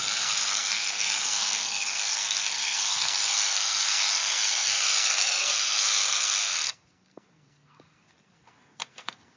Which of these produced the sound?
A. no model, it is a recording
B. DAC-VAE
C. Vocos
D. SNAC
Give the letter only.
D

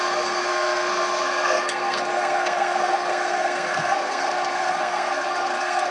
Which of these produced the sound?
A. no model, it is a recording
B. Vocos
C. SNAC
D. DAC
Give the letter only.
C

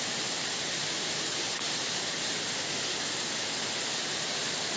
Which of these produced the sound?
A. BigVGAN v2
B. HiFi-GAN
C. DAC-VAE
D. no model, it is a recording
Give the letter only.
D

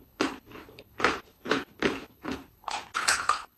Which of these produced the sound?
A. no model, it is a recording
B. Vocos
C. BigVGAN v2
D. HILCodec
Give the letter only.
D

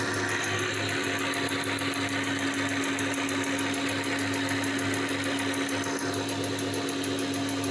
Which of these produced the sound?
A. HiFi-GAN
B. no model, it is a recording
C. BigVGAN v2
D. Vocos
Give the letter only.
B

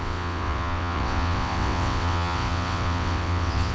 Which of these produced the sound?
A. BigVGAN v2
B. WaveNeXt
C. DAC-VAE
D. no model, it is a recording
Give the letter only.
B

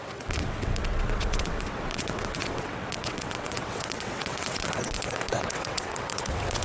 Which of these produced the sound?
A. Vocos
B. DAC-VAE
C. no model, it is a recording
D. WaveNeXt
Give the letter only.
D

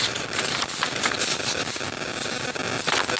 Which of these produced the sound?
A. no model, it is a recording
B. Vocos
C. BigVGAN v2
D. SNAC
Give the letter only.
A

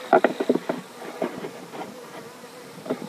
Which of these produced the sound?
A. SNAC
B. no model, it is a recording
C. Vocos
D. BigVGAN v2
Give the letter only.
D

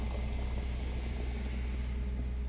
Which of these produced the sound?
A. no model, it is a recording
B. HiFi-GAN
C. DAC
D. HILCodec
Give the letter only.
A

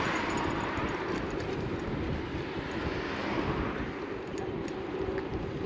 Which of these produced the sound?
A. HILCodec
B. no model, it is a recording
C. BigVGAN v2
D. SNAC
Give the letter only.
B